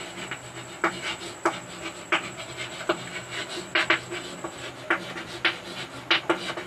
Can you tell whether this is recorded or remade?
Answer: recorded